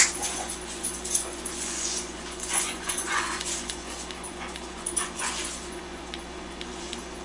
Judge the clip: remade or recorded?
remade